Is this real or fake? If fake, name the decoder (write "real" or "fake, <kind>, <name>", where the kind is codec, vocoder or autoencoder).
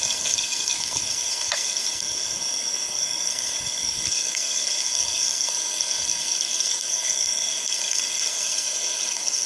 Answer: fake, codec, SNAC